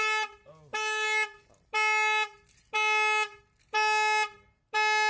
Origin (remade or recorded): recorded